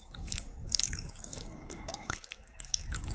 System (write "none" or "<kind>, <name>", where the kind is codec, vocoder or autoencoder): codec, DAC